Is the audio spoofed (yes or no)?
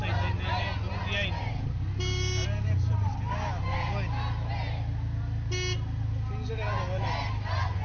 no